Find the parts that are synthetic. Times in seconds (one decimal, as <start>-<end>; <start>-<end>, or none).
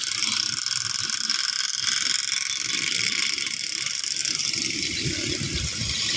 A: none